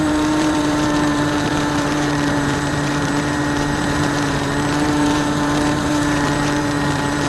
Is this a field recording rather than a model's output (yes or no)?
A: no